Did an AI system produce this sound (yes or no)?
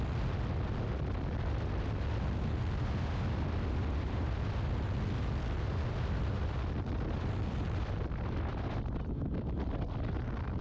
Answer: no